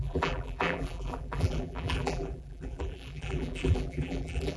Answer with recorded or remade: remade